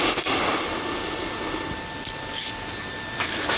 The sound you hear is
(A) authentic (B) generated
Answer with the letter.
A